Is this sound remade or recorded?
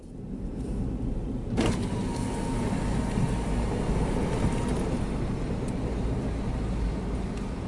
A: recorded